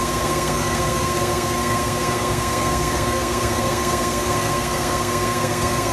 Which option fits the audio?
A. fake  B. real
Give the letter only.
A